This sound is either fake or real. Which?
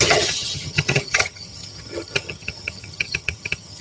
fake